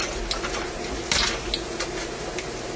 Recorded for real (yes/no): yes